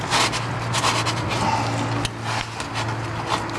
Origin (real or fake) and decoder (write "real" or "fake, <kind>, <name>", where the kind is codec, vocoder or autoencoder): real